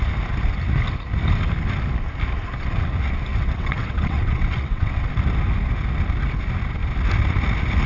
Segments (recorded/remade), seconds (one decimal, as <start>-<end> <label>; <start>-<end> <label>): 0.0-3.3 recorded; 3.3-5.1 remade; 5.1-7.9 recorded